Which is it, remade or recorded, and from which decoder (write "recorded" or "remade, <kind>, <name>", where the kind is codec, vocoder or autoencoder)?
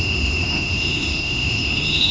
remade, autoencoder, DAC-VAE